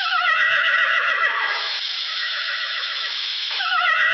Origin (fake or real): fake